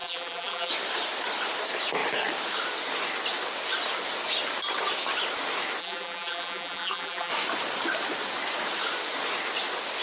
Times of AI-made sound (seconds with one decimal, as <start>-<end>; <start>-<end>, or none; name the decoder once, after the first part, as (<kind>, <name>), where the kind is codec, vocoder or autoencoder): 0.0-0.7 (vocoder, BigVGAN v2); 5.8-7.3